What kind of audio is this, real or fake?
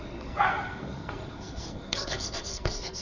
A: fake